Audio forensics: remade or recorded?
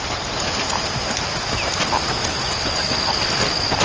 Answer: recorded